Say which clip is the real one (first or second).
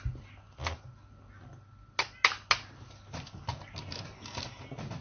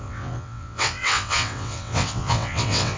first